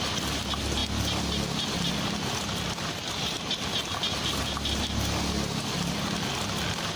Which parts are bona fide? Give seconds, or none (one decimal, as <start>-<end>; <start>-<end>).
0.0-7.0